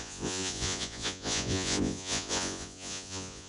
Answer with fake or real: fake